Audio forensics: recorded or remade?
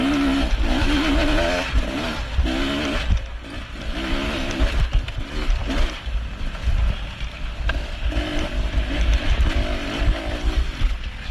recorded